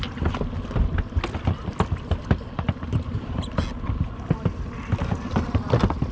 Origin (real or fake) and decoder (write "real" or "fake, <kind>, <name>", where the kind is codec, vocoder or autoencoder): real